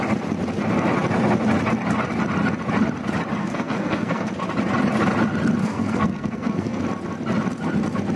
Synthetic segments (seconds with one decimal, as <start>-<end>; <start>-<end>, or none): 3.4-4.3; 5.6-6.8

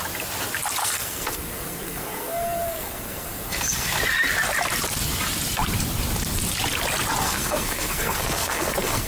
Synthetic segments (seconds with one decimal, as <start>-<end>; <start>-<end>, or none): 0.8-3.9; 7.2-9.1

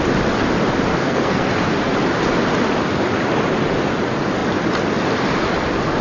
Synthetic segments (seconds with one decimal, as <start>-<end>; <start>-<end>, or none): 0.9-1.5